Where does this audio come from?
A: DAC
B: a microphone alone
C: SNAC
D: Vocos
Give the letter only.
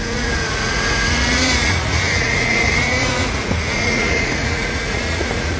D